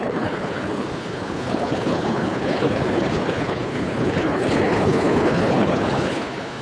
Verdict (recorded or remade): remade